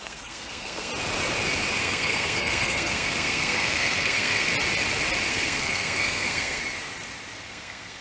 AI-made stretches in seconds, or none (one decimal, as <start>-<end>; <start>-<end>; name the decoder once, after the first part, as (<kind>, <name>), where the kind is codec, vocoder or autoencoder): 0.0-0.9 (codec, SNAC); 1.8-4.5; 5.3-6.6; 7.5-8.0